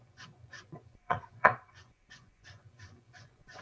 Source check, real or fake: fake